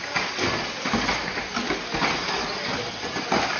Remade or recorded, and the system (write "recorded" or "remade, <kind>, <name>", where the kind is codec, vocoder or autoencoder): recorded